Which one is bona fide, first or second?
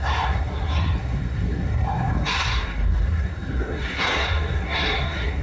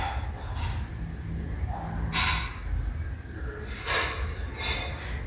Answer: second